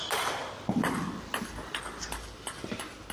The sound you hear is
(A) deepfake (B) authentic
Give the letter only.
B